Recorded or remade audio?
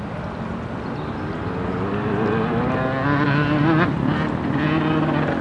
recorded